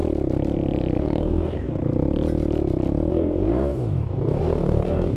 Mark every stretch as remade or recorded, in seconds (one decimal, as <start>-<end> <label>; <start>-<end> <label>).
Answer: 0.0-1.0 recorded; 1.0-1.8 remade; 1.8-3.1 recorded; 3.1-5.2 remade